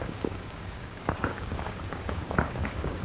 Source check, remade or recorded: remade